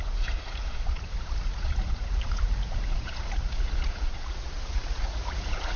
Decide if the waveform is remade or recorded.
remade